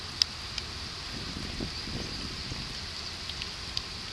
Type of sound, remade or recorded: recorded